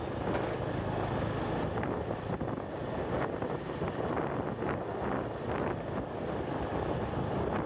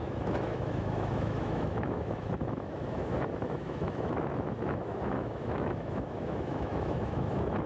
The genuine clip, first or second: first